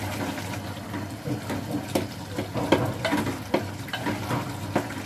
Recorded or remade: recorded